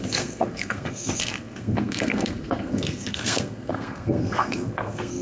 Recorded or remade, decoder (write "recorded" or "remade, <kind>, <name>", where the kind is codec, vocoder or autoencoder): remade, codec, SNAC